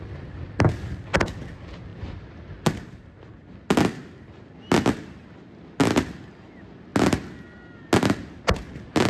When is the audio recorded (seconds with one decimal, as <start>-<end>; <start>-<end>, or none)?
0.0-9.1